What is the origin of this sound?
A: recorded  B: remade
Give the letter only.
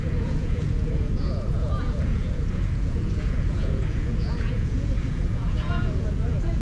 B